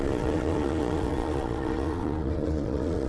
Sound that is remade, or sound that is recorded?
remade